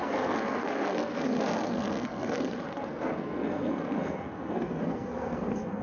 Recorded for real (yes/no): no